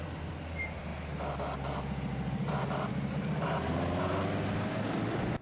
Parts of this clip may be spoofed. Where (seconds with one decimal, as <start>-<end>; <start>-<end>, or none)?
none